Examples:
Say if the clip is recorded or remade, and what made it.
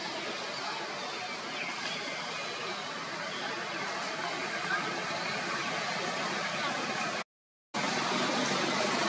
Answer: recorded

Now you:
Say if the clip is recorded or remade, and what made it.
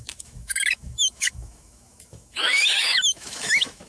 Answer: remade, autoencoder, DAC-VAE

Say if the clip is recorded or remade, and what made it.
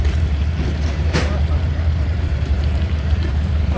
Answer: remade, vocoder, BigVGAN v2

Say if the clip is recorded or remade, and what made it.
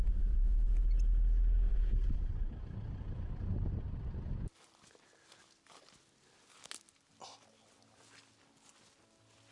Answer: recorded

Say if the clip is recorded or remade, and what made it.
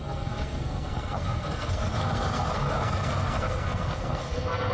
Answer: remade, codec, SNAC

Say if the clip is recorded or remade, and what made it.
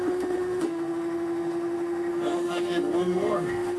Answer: remade, autoencoder, DAC-VAE